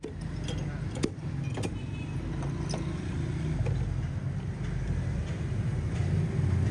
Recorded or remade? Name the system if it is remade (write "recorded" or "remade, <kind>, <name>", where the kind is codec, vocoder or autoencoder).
recorded